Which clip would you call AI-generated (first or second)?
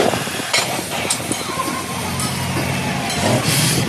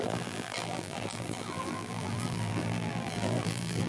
second